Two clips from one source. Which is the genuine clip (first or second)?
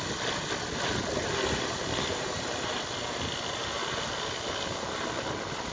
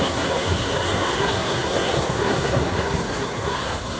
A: first